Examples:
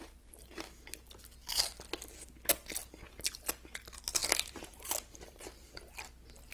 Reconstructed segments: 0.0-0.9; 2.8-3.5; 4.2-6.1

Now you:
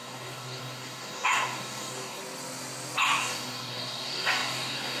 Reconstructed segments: 0.0-2.2; 3.2-5.0

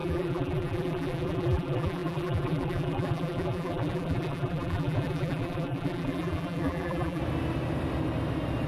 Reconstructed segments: 0.0-7.2

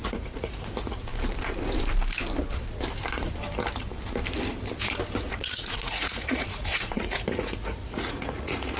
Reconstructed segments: 0.0-1.1; 5.3-8.8

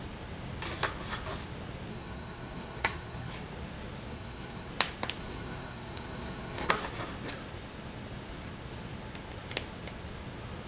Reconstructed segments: 1.9-3.3; 4.1-4.7; 5.2-6.7